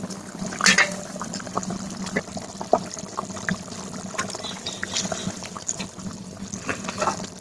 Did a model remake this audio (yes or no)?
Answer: no